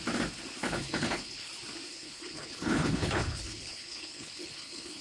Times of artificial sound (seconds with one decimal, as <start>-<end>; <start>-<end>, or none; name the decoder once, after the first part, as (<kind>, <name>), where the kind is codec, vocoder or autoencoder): 0.6-1.5 (codec, HILCodec); 1.9-5.0